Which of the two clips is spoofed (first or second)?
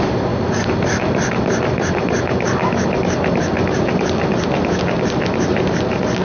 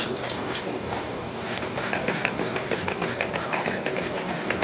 second